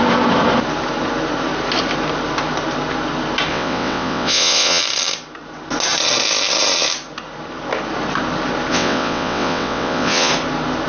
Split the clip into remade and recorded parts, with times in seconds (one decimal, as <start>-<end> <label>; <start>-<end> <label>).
0.0-3.5 recorded; 3.5-4.8 remade; 4.8-8.7 recorded; 8.7-10.3 remade; 10.3-10.9 recorded